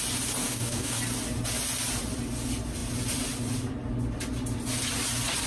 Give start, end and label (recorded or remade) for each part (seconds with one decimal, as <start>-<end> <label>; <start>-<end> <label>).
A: 0.0-0.4 recorded; 0.4-1.0 remade; 1.0-5.5 recorded